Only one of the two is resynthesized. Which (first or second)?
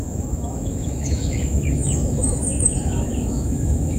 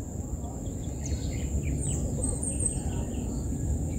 first